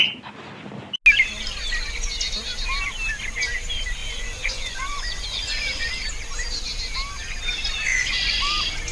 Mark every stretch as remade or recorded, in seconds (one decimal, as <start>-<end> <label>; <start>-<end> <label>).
0.0-4.0 recorded; 4.0-5.9 remade; 5.9-7.9 recorded; 7.9-8.4 remade; 8.4-8.9 recorded